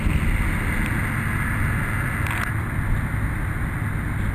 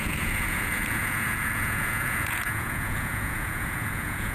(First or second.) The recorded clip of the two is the first